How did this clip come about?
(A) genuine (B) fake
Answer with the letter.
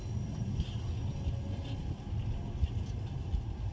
A